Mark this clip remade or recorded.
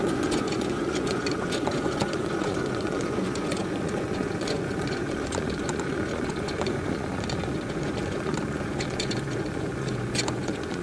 remade